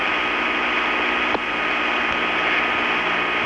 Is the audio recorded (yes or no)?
yes